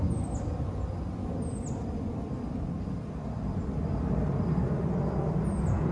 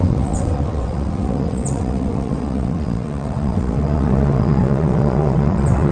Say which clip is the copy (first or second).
second